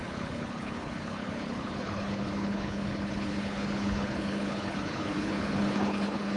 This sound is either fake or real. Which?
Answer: fake